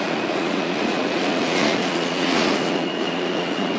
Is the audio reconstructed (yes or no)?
yes